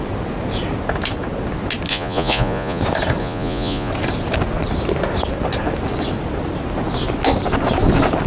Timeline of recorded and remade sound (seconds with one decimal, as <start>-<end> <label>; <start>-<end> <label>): 0.0-1.9 recorded; 1.9-2.8 remade; 2.8-3.2 recorded; 3.2-3.9 remade; 3.9-8.3 recorded